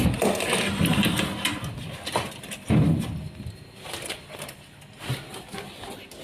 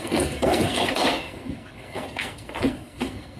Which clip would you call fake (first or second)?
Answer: second